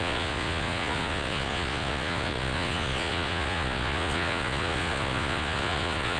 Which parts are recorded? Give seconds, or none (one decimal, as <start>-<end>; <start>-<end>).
none